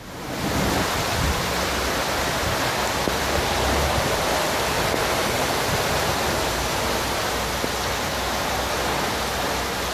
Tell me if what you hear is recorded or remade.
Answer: recorded